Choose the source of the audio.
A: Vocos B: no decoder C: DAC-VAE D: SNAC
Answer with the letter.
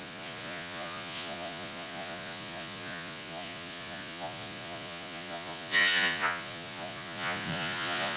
A